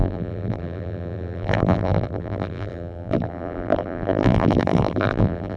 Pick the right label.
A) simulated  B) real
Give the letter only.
A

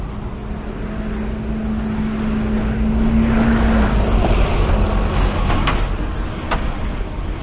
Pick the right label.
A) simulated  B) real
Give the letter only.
B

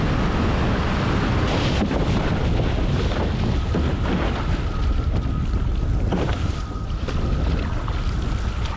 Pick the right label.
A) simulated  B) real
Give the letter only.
B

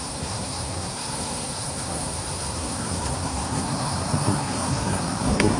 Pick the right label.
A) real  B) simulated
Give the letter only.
B